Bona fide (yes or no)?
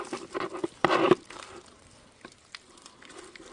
yes